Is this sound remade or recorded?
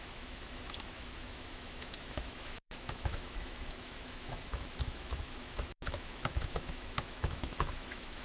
remade